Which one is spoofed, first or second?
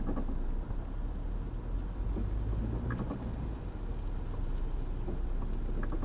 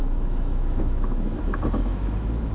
second